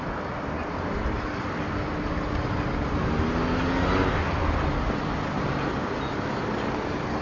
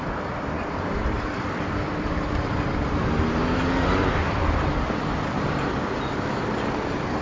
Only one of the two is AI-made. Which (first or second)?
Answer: second